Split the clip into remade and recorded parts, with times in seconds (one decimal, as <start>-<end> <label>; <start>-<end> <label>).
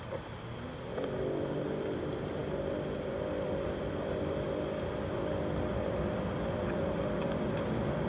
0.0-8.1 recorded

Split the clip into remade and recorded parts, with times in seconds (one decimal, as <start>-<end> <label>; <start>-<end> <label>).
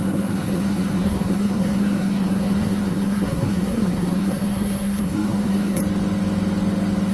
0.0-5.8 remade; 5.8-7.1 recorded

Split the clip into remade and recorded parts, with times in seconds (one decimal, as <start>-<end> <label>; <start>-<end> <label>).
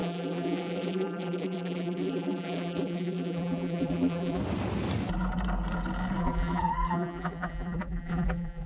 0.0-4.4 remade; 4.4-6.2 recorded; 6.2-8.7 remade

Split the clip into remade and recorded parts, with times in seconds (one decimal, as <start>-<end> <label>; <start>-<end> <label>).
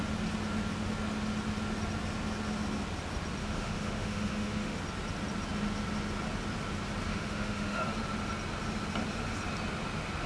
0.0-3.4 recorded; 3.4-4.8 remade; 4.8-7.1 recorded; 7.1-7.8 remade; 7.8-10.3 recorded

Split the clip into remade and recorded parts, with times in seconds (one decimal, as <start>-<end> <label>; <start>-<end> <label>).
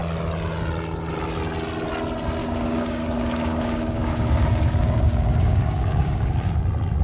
0.0-2.4 recorded; 2.4-6.6 remade; 6.6-7.0 recorded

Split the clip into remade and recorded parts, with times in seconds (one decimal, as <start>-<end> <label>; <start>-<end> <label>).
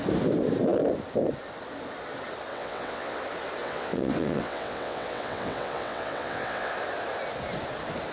0.0-2.5 recorded; 2.5-3.2 remade; 3.2-3.6 recorded; 3.6-6.7 remade; 6.7-8.1 recorded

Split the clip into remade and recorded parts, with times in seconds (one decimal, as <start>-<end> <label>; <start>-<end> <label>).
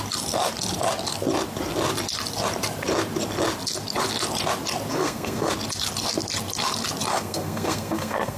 0.0-4.9 recorded; 4.9-5.5 remade; 5.5-7.1 recorded; 7.1-8.4 remade